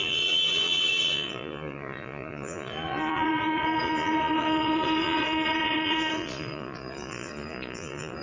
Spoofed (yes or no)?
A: yes